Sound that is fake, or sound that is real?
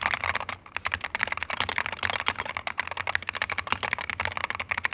real